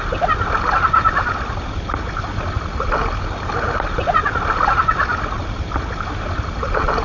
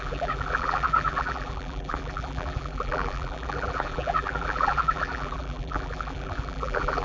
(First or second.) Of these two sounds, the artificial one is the second